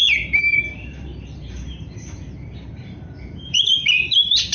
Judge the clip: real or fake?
fake